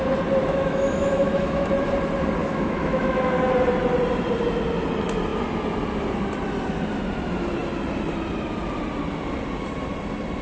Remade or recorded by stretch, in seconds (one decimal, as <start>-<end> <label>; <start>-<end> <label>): 0.0-0.4 recorded; 0.4-1.7 remade; 1.7-2.4 recorded; 2.4-3.5 remade; 3.5-10.4 recorded